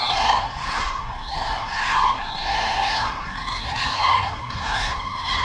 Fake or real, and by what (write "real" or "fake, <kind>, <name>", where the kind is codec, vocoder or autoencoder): fake, codec, SNAC